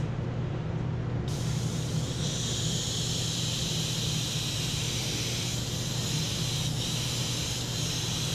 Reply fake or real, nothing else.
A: fake